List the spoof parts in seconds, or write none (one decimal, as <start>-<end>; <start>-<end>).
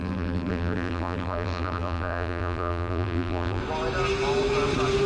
0.0-3.6